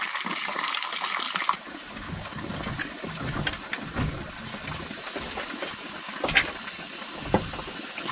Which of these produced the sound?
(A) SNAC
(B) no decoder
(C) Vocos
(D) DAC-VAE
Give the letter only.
B